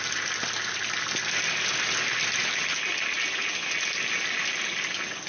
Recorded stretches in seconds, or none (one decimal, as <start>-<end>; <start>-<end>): 0.0-5.3